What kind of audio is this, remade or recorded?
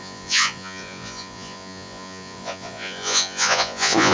remade